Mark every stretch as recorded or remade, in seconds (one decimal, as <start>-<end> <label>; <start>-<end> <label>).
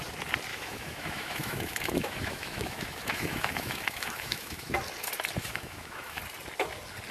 0.0-0.5 recorded; 0.5-4.7 remade; 4.7-5.4 recorded; 5.4-6.2 remade; 6.2-7.1 recorded